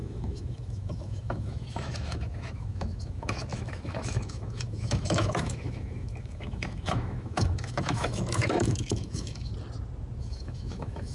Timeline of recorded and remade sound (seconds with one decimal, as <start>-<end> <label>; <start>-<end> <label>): 0.0-9.5 remade; 9.5-10.2 recorded; 10.2-11.1 remade